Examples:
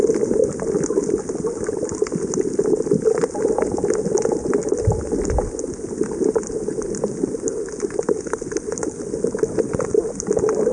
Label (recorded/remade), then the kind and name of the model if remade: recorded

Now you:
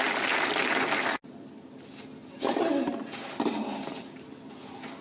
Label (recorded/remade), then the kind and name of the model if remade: recorded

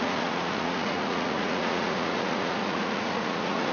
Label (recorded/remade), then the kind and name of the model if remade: remade, vocoder, Vocos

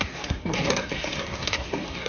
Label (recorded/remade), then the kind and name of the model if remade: remade, codec, SNAC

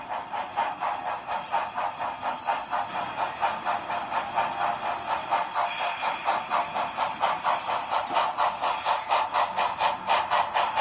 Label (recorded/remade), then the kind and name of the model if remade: recorded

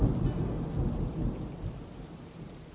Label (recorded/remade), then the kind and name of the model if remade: recorded